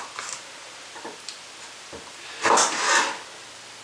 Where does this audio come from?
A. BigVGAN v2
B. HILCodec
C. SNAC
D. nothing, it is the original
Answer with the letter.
D